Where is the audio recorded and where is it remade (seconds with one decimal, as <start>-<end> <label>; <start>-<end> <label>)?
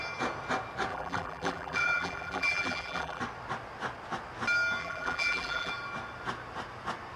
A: 0.0-0.9 recorded; 0.9-3.2 remade; 3.2-4.8 recorded; 4.8-5.7 remade; 5.7-7.2 recorded